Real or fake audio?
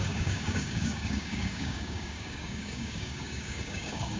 fake